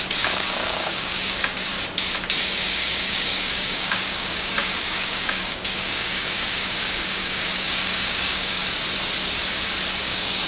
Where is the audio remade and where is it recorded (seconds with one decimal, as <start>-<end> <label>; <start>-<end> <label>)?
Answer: 0.0-1.7 remade; 1.7-2.5 recorded; 2.5-8.6 remade; 8.6-10.0 recorded; 10.0-10.5 remade